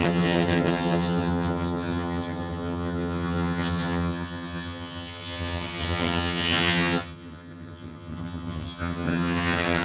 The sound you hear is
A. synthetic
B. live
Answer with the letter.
A